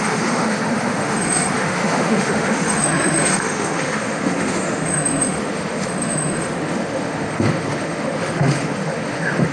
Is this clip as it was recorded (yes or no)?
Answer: no